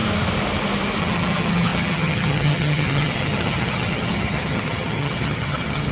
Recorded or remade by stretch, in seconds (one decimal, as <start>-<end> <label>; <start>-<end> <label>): 0.0-1.0 recorded; 1.0-5.9 remade